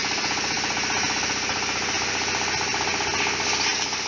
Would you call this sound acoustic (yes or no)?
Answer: yes